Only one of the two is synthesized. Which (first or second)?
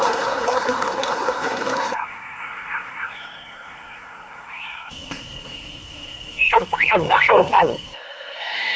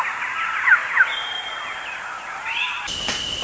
first